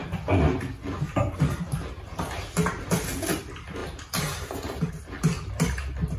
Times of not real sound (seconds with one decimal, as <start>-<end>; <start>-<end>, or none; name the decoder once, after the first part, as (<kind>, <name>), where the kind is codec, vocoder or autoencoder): 3.8-4.9 (vocoder, BigVGAN v2)